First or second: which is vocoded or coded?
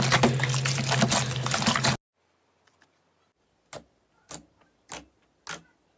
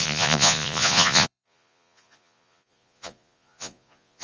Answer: second